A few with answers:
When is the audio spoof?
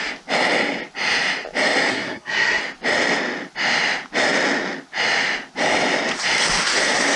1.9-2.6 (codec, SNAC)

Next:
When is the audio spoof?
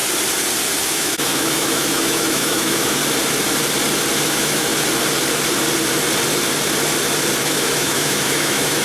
0.8-3.0 (autoencoder, DAC-VAE); 4.2-4.7; 7.4-8.8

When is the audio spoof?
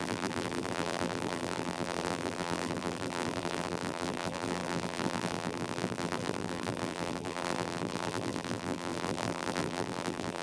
0.0-10.4 (vocoder, BigVGAN v2)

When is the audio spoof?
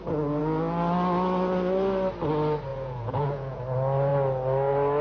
2.7-3.6 (vocoder, Vocos)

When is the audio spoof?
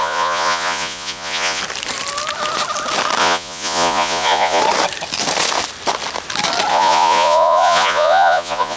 0.0-1.6 (vocoder, Vocos); 3.2-4.6; 6.7-8.8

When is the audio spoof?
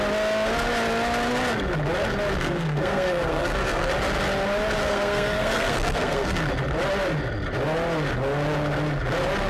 2.4-3.9 (codec, SNAC); 4.8-6.4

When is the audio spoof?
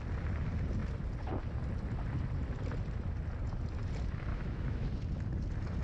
4.3-4.9 (autoencoder, DAC-VAE)